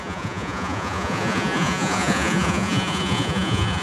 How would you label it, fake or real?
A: fake